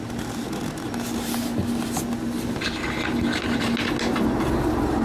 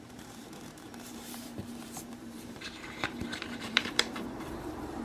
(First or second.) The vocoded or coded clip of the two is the second